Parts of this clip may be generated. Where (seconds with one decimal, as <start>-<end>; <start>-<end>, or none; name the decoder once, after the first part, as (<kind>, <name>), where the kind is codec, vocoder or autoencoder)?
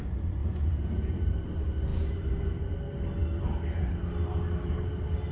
0.4-1.1 (vocoder, Vocos)